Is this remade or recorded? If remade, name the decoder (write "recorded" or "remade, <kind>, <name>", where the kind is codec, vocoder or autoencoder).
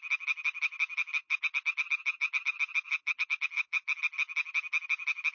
recorded